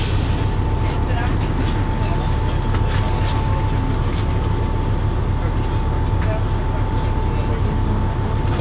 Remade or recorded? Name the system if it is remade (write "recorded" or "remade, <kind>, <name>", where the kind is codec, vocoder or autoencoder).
recorded